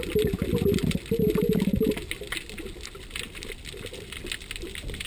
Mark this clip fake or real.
real